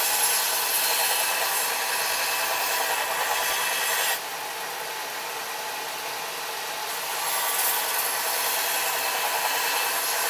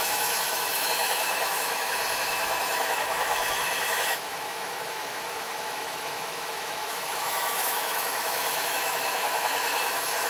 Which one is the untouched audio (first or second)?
first